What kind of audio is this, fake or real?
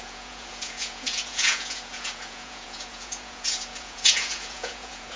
fake